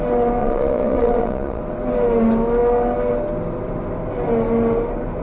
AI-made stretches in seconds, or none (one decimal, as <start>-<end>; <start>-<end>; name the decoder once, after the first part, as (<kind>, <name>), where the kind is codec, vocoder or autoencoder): 0.4-1.6 (vocoder, Vocos)